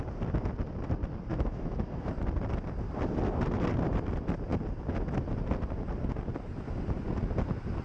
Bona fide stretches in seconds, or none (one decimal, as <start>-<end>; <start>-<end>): 0.0-1.3; 2.1-7.8